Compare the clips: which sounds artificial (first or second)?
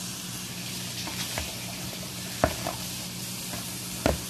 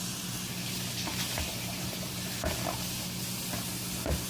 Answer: first